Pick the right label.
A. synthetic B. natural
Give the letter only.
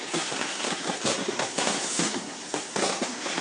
A